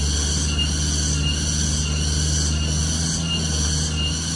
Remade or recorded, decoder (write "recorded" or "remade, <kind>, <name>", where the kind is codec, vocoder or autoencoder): recorded